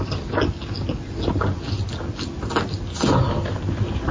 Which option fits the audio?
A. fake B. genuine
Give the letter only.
B